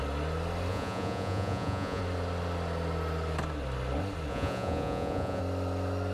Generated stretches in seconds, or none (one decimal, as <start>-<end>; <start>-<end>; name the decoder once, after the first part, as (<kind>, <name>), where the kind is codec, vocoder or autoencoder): 0.7-2.0 (vocoder, Vocos); 4.3-5.4